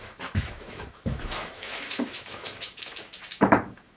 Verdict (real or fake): fake